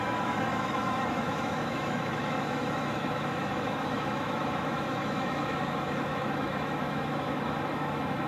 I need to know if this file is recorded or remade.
remade